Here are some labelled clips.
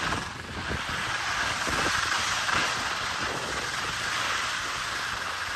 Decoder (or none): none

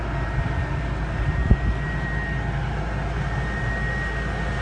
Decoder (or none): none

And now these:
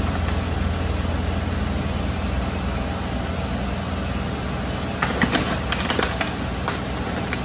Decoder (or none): none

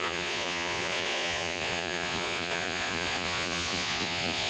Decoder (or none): vocoder, Vocos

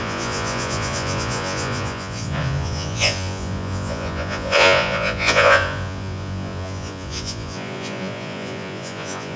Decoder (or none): vocoder, Vocos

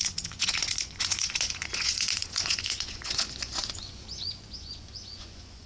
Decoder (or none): vocoder, Vocos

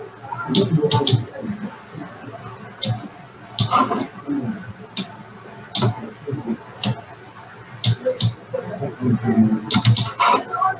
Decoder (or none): none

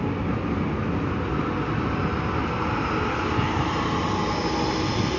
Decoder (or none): none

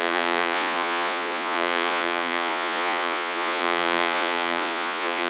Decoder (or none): vocoder, Vocos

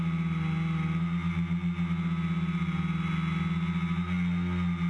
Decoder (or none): none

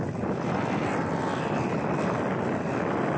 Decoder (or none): none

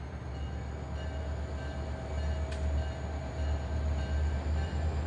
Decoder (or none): none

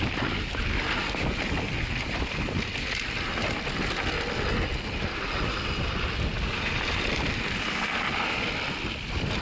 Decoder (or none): none